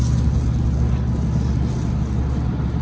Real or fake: real